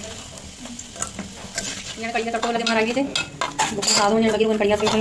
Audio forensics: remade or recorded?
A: recorded